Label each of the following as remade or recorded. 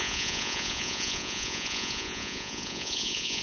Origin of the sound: remade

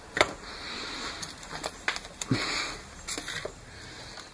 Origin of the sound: recorded